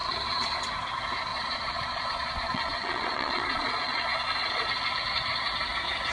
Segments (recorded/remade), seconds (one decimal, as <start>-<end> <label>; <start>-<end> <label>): 0.0-0.6 remade; 0.6-1.3 recorded; 1.3-4.7 remade; 4.7-6.1 recorded